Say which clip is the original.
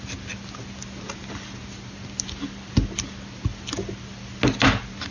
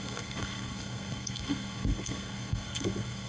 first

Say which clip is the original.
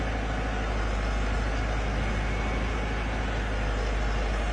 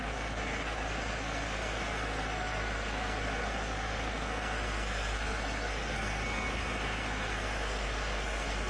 first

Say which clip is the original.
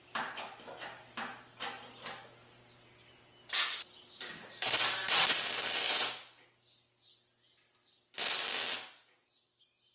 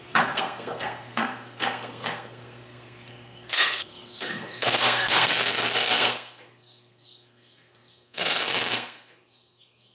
first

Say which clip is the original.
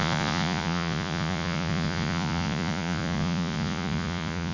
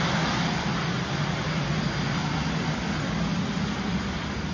second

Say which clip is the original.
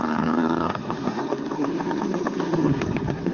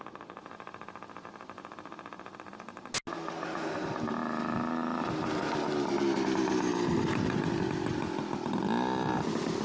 second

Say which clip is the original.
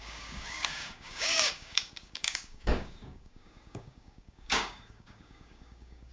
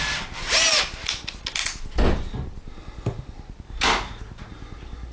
second